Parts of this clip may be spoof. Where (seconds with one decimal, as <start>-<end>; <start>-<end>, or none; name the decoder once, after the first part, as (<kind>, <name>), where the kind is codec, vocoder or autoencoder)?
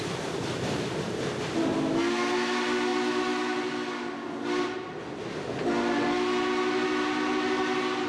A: none